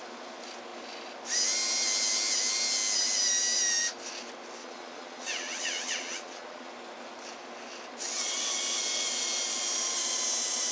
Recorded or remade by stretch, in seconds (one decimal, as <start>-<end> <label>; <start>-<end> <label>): 0.0-4.6 recorded; 4.6-6.7 remade; 6.7-10.7 recorded